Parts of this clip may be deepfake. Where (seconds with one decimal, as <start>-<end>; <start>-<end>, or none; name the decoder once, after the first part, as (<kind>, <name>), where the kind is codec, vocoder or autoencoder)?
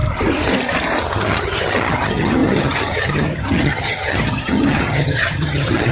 1.0-5.9 (vocoder, HiFi-GAN)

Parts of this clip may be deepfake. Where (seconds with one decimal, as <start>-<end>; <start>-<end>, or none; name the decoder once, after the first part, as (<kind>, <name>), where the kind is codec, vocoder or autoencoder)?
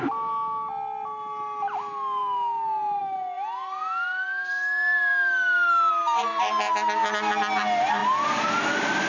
none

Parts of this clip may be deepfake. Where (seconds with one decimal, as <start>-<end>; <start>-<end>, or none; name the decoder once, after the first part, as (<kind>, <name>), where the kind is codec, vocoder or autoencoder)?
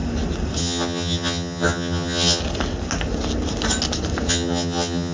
0.6-2.4 (vocoder, HiFi-GAN); 4.3-5.1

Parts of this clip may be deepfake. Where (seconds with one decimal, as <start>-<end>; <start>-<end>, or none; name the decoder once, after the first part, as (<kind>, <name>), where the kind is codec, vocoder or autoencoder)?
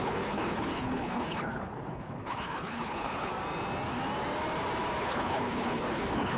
0.0-3.3 (codec, HILCodec); 5.0-6.4